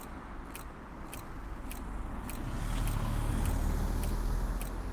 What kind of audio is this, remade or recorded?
recorded